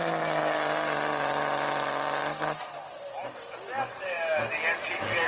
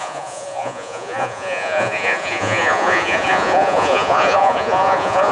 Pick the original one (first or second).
first